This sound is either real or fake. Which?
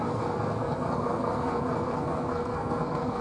fake